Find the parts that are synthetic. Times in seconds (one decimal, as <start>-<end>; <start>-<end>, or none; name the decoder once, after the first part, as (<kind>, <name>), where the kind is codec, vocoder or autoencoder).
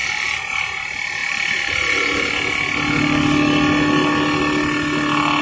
none